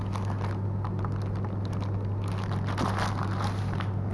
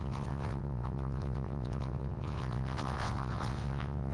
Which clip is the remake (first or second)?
second